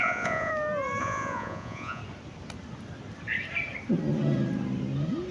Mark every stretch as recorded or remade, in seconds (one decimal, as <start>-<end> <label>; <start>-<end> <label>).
0.0-0.5 remade; 0.5-1.0 recorded; 1.0-2.0 remade; 2.0-5.3 recorded